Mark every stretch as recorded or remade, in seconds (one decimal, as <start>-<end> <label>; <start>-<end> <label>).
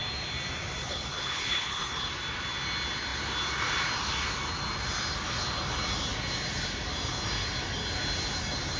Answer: 0.0-0.8 recorded; 0.8-2.1 remade; 2.1-8.8 recorded